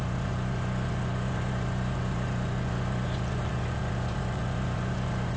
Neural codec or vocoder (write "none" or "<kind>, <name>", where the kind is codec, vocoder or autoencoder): vocoder, Vocos